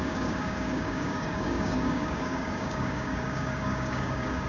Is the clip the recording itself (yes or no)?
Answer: no